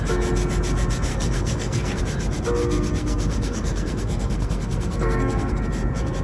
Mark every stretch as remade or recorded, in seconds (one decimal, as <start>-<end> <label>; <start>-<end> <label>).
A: 0.0-1.1 recorded; 1.1-2.0 remade; 2.0-2.6 recorded; 2.6-5.6 remade; 5.6-6.2 recorded